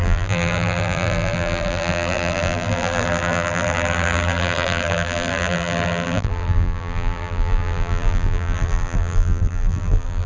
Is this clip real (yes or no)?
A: no